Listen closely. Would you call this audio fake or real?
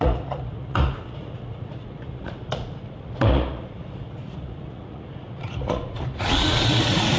fake